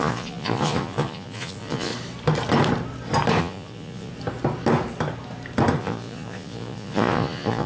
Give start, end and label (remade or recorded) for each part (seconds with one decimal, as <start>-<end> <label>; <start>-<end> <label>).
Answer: 0.0-1.9 remade; 1.9-3.4 recorded; 3.4-4.1 remade; 4.1-5.8 recorded; 5.8-7.7 remade